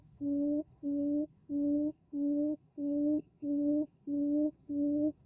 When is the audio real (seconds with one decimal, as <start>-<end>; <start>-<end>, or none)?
none